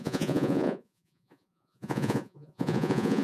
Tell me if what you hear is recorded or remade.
remade